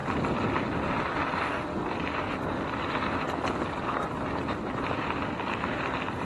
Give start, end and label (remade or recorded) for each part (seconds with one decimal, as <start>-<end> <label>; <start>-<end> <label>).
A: 0.0-2.9 remade; 2.9-4.6 recorded; 4.6-5.8 remade; 5.8-6.2 recorded

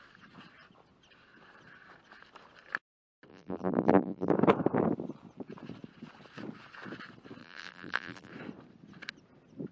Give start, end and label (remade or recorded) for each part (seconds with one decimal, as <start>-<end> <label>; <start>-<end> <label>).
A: 0.0-3.3 recorded; 3.3-4.3 remade; 4.3-7.4 recorded; 7.4-8.3 remade; 8.3-9.7 recorded

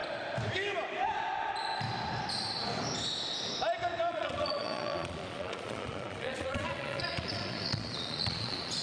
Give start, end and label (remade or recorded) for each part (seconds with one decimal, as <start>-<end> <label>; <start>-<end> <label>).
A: 0.0-4.1 recorded; 4.1-8.8 remade

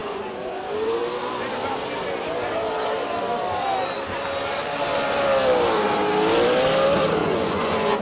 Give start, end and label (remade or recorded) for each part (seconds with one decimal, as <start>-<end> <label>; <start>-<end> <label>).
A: 0.0-0.6 remade; 0.6-7.2 recorded; 7.2-8.0 remade

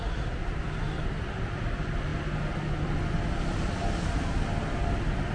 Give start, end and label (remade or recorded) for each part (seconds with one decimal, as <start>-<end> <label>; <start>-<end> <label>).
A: 0.0-5.3 recorded

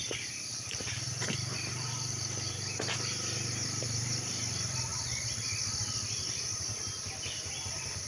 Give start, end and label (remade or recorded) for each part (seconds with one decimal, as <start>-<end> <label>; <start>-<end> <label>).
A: 0.0-0.5 recorded; 0.5-4.4 remade; 4.4-8.1 recorded

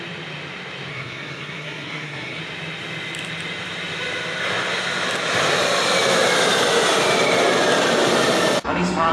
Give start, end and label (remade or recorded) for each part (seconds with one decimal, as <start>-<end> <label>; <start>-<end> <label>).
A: 0.0-0.9 recorded; 0.9-2.4 remade; 2.4-9.1 recorded

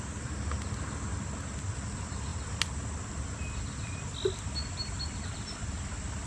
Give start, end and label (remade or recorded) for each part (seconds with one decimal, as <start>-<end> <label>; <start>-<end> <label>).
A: 0.0-6.3 recorded